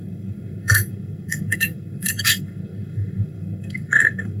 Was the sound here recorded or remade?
remade